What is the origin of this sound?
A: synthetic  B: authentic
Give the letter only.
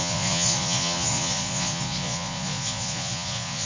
A